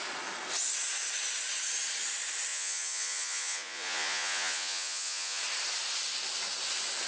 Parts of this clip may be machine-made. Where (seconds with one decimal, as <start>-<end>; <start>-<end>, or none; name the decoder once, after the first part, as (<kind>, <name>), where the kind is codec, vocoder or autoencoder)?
2.5-5.4 (vocoder, Vocos)